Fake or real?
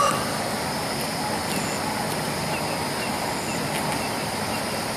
real